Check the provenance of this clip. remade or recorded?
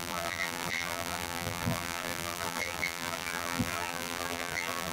remade